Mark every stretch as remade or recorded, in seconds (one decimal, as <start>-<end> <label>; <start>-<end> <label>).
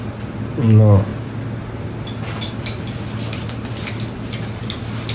0.0-5.1 recorded